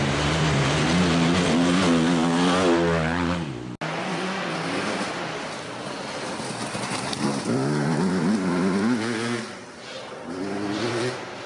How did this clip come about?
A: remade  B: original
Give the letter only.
B